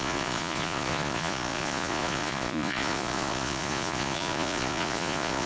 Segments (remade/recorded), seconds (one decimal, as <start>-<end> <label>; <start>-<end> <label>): 0.0-5.5 remade